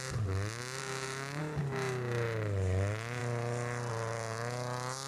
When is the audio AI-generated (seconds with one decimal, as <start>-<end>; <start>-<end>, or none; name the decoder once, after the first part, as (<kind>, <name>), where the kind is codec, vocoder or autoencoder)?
0.8-1.4 (codec, DAC)